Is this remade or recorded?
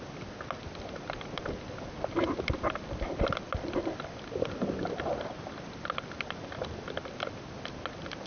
recorded